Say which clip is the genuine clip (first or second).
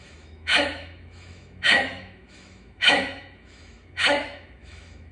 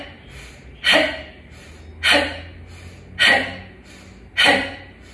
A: second